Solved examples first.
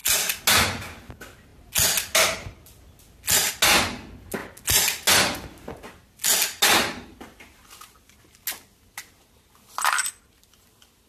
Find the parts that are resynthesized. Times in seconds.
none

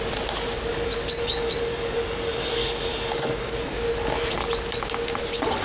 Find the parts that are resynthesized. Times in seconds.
0.7-3.8 (codec, DAC)

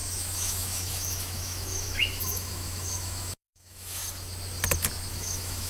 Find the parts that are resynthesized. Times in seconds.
0.0-4.0 (autoencoder, DAC-VAE); 5.1-5.7